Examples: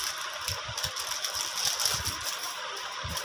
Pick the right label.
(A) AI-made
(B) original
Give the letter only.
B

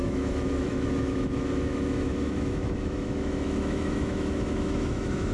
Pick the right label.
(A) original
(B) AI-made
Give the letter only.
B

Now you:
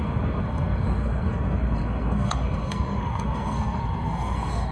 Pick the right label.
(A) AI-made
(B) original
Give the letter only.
A